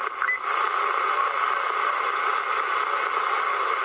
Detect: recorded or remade recorded